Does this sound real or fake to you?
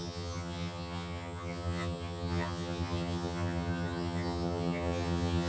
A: fake